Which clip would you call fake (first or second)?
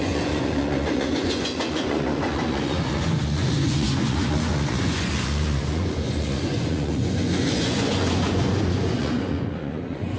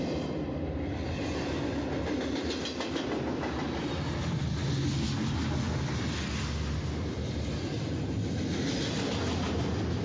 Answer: first